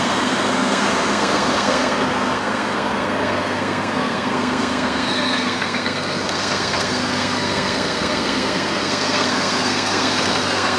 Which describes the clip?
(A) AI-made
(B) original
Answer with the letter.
A